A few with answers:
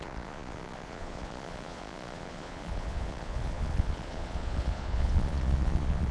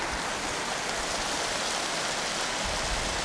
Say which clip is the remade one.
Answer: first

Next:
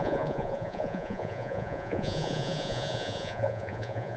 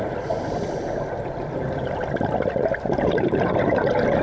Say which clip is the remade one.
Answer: first